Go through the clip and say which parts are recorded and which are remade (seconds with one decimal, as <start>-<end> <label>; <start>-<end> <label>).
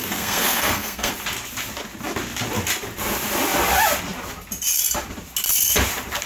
0.0-1.1 remade; 1.1-6.3 recorded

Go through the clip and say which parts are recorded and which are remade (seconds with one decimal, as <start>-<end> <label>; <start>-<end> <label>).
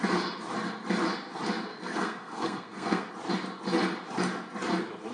0.0-1.7 recorded; 1.7-3.1 remade; 3.1-5.1 recorded